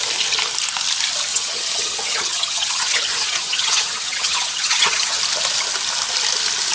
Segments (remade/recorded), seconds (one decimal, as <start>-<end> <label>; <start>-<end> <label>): 0.0-1.3 recorded; 1.3-5.2 remade; 5.2-6.7 recorded